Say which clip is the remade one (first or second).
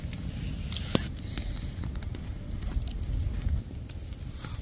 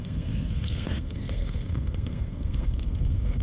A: second